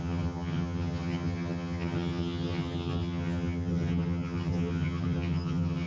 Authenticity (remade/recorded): remade